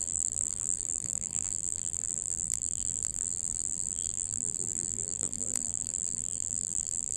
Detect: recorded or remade remade